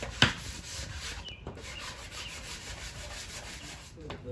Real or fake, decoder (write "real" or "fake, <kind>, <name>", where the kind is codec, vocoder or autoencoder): fake, vocoder, BigVGAN v2